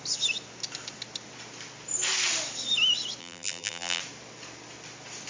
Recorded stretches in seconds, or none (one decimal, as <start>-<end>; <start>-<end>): 0.0-3.2; 4.0-5.3